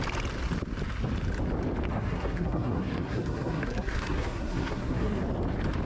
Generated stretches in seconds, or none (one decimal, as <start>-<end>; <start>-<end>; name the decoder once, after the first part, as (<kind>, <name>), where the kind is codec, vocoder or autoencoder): 1.9-5.2 (codec, SNAC)